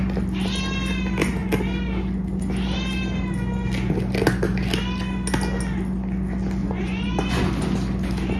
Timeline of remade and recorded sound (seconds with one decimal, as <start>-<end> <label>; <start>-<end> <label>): 0.0-6.6 recorded; 6.6-7.4 remade; 7.4-8.4 recorded